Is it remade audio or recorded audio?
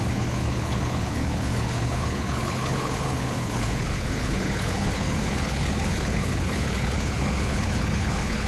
remade